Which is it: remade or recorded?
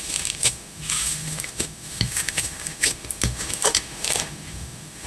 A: remade